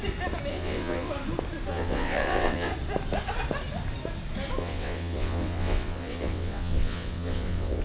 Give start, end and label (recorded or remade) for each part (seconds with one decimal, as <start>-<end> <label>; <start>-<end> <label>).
0.0-0.5 recorded; 0.5-1.1 remade; 1.1-1.7 recorded; 1.7-2.7 remade; 2.7-4.6 recorded; 4.6-7.8 remade

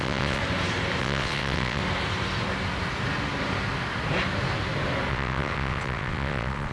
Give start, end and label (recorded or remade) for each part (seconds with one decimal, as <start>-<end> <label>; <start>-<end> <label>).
0.0-0.4 remade; 0.4-1.0 recorded; 1.0-1.8 remade; 1.8-5.1 recorded; 5.1-6.7 remade

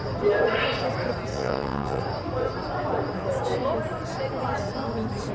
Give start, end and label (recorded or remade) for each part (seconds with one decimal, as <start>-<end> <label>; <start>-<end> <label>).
0.0-1.3 recorded; 1.3-2.0 remade; 2.0-5.3 recorded

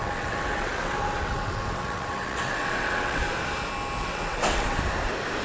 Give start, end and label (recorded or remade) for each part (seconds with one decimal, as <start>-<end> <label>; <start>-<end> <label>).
0.0-3.2 remade; 3.2-4.0 recorded; 4.0-4.8 remade; 4.8-5.4 recorded

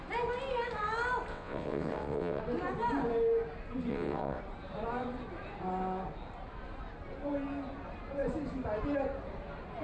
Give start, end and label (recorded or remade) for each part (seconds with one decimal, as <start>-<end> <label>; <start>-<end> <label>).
0.0-1.3 recorded; 1.3-2.4 remade; 2.4-3.9 recorded; 3.9-4.4 remade; 4.4-9.8 recorded